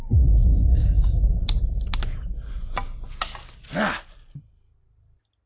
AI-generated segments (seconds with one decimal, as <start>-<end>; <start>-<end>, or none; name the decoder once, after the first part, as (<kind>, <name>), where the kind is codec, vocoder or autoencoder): 0.5-1.2 (codec, SNAC)